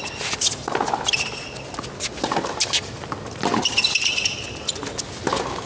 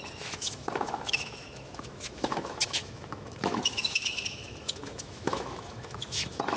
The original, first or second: first